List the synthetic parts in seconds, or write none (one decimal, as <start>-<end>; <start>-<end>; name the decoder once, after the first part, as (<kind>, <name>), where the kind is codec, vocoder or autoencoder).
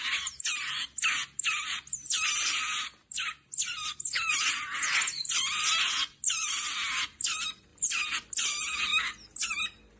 7.7-8.3 (vocoder, BigVGAN v2); 8.9-10.0